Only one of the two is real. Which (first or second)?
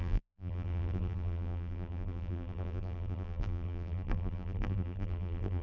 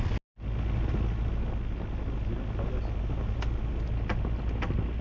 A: second